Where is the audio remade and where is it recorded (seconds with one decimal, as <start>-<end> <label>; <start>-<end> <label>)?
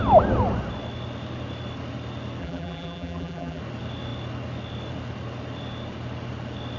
0.0-2.4 recorded; 2.4-3.6 remade; 3.6-6.8 recorded